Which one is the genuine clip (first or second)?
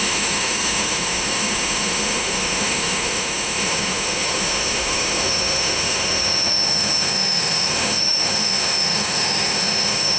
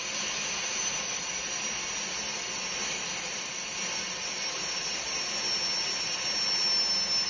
second